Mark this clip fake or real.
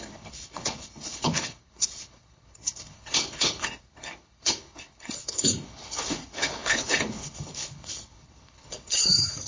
fake